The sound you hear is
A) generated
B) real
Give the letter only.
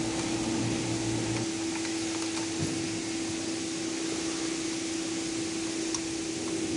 B